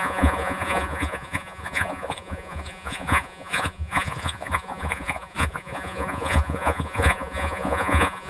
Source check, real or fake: fake